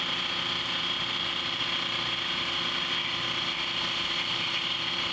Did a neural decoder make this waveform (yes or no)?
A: no